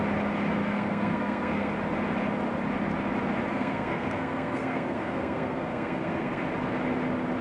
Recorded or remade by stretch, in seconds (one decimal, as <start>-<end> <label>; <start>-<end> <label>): 0.0-0.6 recorded; 0.6-1.7 remade; 1.7-3.5 recorded; 3.5-6.4 remade; 6.4-7.4 recorded